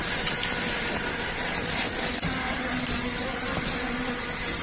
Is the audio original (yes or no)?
yes